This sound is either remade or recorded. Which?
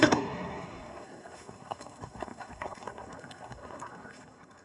remade